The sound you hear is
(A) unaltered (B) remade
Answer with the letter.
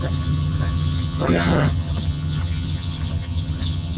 B